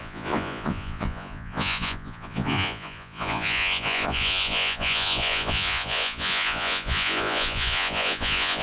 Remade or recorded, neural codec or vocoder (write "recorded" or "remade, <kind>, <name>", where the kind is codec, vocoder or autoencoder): remade, vocoder, Vocos